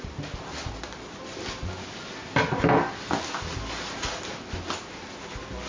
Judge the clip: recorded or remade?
recorded